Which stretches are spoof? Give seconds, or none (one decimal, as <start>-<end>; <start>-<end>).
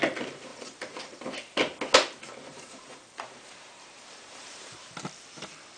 0.5-1.2; 2.5-4.7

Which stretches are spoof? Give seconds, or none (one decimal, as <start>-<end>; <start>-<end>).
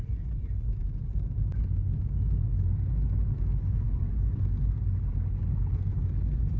none